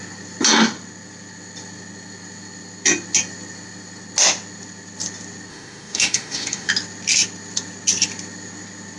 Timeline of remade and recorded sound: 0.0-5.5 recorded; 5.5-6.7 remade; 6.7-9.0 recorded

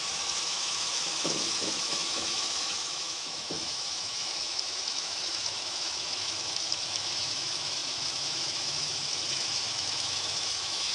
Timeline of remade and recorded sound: 0.0-10.9 remade

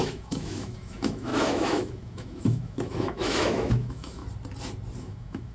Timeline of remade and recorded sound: 0.0-4.2 remade; 4.2-5.0 recorded; 5.0-5.5 remade